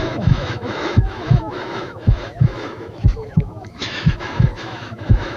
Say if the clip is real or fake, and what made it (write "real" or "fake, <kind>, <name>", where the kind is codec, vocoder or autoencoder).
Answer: fake, autoencoder, DAC-VAE